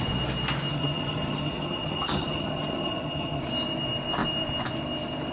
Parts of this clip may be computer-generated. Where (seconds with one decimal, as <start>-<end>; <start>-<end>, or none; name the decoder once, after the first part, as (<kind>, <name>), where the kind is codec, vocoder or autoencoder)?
0.7-3.4 (vocoder, HiFi-GAN)